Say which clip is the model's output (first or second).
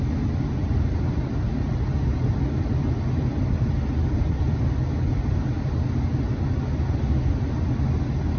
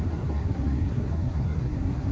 second